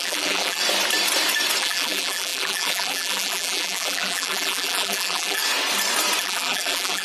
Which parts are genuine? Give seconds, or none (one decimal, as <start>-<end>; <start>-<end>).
0.6-1.6; 5.4-6.2